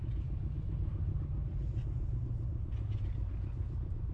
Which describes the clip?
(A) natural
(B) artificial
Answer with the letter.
A